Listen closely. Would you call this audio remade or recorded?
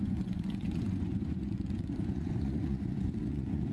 remade